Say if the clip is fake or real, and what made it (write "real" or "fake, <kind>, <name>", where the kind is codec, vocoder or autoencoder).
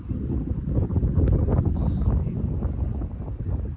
real